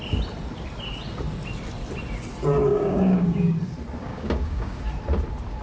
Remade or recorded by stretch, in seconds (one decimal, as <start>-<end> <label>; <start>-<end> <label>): 0.0-2.7 recorded; 2.7-3.6 remade; 3.6-4.0 recorded; 4.0-4.8 remade; 4.8-5.6 recorded